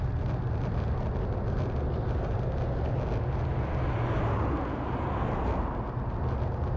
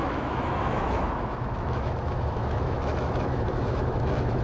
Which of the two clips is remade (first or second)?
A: second